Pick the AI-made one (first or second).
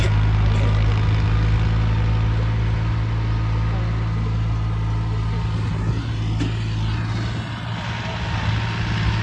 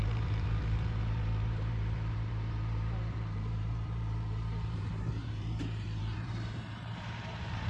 second